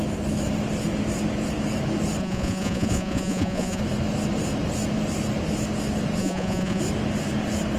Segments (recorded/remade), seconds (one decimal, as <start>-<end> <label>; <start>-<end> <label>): 0.0-2.2 recorded; 2.2-3.8 remade; 3.8-6.2 recorded; 6.2-6.8 remade; 6.8-7.8 recorded